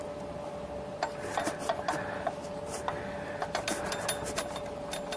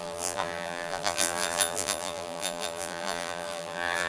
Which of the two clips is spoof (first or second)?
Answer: second